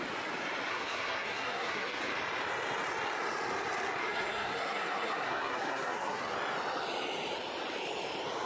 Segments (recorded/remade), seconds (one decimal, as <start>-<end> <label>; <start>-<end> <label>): 0.0-0.7 recorded; 0.7-2.0 remade; 2.0-4.0 recorded; 4.0-6.2 remade; 6.2-8.5 recorded